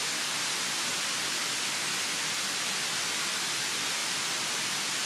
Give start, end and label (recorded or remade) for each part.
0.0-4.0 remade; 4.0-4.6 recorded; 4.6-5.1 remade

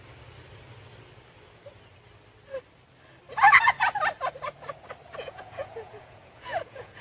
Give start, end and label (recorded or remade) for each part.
0.0-5.2 recorded; 5.2-7.0 remade

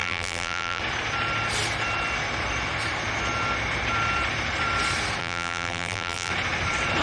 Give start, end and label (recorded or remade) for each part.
0.0-0.8 remade; 0.8-5.2 recorded; 5.2-6.3 remade; 6.3-7.0 recorded

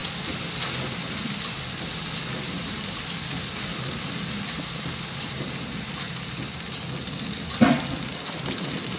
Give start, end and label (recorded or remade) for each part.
0.0-9.0 recorded

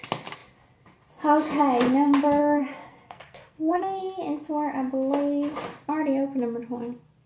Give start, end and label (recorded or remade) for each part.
0.0-2.4 recorded; 2.4-4.0 remade; 4.0-7.3 recorded

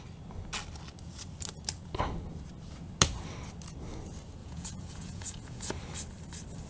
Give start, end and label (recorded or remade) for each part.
0.0-4.4 recorded; 4.4-5.7 remade; 5.7-6.7 recorded

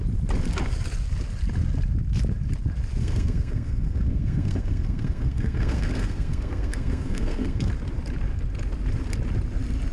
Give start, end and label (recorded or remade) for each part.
0.0-3.0 recorded; 3.0-7.7 remade; 7.7-9.9 recorded